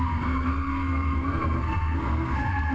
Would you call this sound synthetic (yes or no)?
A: yes